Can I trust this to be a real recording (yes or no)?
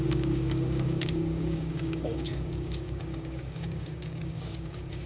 no